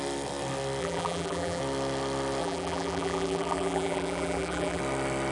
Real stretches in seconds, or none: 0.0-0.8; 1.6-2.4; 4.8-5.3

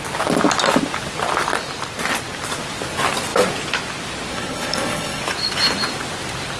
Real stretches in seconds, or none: 0.0-4.3; 5.2-6.6